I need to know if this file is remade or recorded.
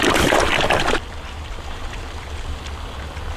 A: recorded